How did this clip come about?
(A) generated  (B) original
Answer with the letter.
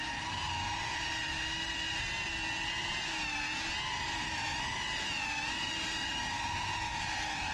B